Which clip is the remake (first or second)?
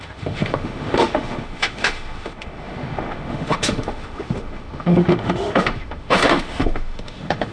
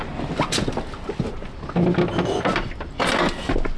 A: first